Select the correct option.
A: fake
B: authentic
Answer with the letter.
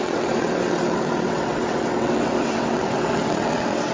A